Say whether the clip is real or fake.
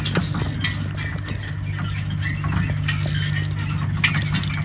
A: real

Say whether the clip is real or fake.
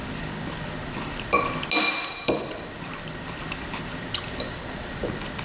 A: real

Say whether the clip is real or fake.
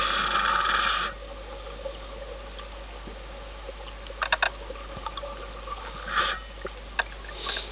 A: real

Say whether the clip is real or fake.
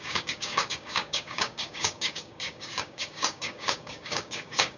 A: fake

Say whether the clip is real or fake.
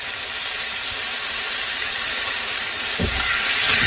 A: real